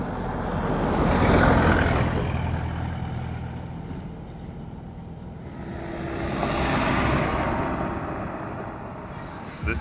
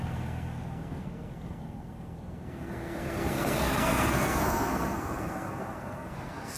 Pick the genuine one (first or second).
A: first